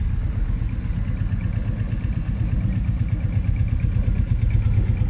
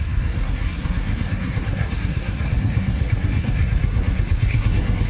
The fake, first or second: second